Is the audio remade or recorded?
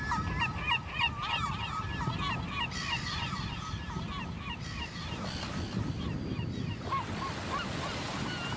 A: recorded